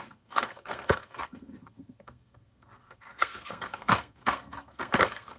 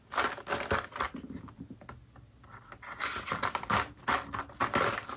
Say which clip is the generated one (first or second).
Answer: first